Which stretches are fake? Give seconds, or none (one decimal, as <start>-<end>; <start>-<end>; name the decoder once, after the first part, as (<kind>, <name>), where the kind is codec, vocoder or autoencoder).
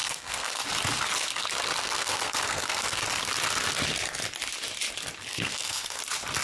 0.0-0.6 (codec, SNAC); 1.8-3.0; 5.3-6.0